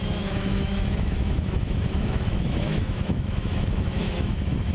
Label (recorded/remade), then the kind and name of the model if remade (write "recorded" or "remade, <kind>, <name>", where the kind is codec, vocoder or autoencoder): remade, autoencoder, DAC-VAE